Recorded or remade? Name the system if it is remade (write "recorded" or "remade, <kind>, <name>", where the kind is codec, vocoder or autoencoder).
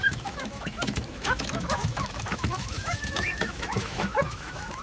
remade, autoencoder, DAC-VAE